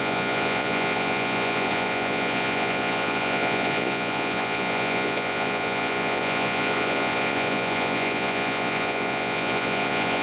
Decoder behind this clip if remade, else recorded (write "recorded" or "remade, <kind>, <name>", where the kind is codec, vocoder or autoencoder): remade, vocoder, Vocos